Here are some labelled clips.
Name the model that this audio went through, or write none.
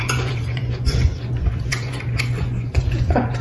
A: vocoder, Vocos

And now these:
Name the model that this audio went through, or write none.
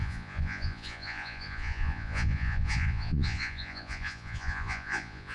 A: vocoder, Vocos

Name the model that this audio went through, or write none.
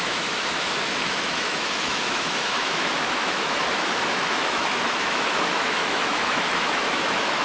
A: autoencoder, DAC-VAE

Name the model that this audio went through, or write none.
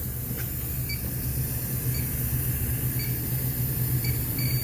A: none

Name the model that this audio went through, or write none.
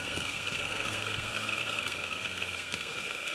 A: codec, SNAC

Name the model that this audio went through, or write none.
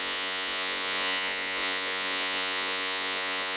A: vocoder, Vocos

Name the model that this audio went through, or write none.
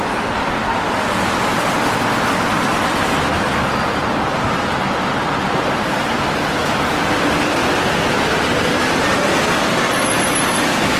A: none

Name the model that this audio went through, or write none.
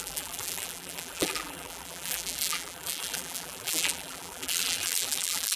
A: vocoder, BigVGAN v2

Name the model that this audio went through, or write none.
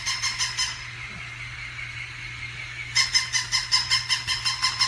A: none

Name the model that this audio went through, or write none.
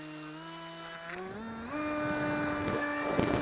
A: none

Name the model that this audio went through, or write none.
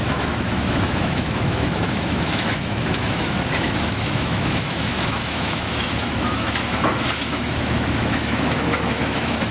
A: autoencoder, DAC-VAE